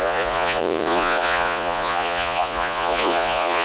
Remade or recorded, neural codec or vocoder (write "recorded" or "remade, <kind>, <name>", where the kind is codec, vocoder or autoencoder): remade, vocoder, Vocos